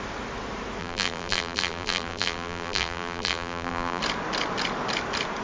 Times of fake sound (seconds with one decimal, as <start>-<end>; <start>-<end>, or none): 0.8-4.0